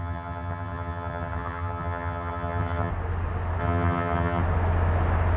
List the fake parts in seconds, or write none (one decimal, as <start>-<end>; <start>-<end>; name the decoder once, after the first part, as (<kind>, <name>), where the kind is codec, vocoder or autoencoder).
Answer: 0.0-2.9 (vocoder, HiFi-GAN); 3.6-4.4